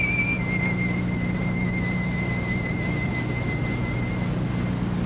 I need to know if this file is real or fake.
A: real